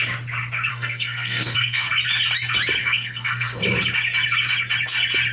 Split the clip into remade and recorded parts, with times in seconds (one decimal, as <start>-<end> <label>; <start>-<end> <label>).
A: 0.0-0.7 recorded; 0.7-1.9 remade; 1.9-2.8 recorded; 2.8-3.6 remade; 3.6-5.3 recorded